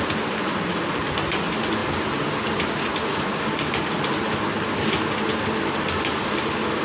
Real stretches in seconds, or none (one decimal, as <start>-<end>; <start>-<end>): 0.0-6.8